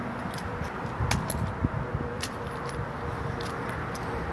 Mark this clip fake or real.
real